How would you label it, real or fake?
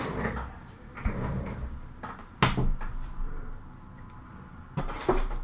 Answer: real